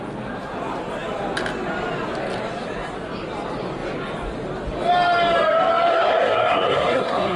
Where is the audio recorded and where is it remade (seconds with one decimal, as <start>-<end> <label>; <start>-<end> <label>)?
0.0-5.9 recorded; 5.9-7.4 remade